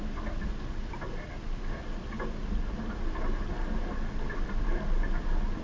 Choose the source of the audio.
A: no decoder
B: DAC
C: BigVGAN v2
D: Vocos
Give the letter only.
A